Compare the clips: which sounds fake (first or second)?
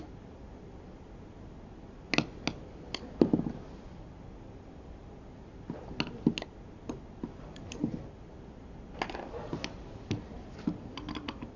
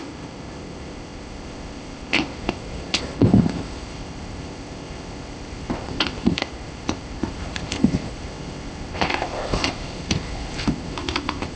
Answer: second